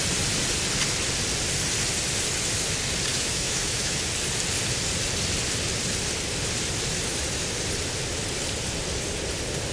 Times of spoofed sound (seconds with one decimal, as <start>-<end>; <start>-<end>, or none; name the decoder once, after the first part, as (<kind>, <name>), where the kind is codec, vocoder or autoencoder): 3.1-4.0 (autoencoder, DAC-VAE)